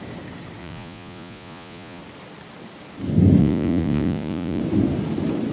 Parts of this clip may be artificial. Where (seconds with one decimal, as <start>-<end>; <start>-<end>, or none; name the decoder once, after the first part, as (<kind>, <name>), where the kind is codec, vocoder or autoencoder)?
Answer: 0.6-2.0 (vocoder, Vocos); 3.4-4.6